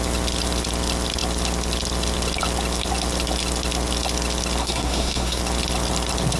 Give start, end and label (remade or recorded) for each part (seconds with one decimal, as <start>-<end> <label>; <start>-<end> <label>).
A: 0.0-4.6 recorded; 4.6-5.4 remade; 5.4-6.4 recorded